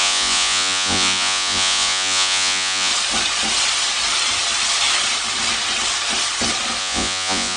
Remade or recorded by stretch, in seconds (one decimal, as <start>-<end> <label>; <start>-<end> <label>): 0.0-2.9 remade; 2.9-6.8 recorded; 6.8-7.6 remade

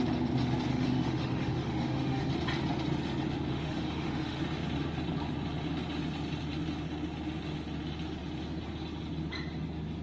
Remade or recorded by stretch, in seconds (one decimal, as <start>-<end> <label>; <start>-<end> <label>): 0.0-0.7 recorded; 0.7-2.3 remade; 2.3-3.5 recorded; 3.5-4.4 remade; 4.4-10.0 recorded

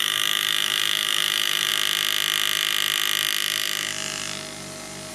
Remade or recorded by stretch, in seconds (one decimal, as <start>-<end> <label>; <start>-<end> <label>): 0.0-1.7 remade; 1.7-5.1 recorded

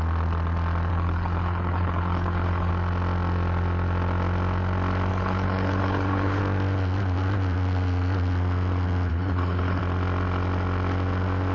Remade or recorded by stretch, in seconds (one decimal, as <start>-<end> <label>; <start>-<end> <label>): 0.0-0.9 recorded; 0.9-2.7 remade; 2.7-5.1 recorded; 5.1-6.4 remade; 6.4-9.1 recorded; 9.1-9.8 remade; 9.8-11.5 recorded

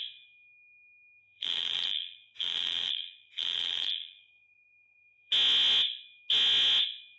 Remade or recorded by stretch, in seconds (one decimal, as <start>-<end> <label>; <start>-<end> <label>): 0.0-1.2 recorded; 1.2-5.3 remade; 5.3-7.2 recorded

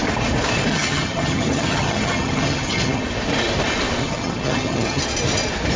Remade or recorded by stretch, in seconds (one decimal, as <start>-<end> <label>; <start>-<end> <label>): 0.0-0.7 recorded; 0.7-3.0 remade; 3.0-4.0 recorded; 4.0-5.0 remade; 5.0-5.8 recorded